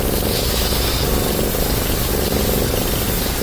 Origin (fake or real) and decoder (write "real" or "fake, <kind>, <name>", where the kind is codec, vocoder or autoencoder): real